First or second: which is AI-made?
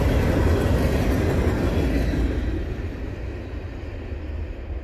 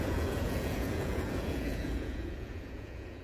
second